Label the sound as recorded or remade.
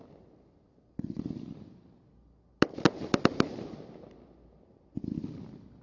recorded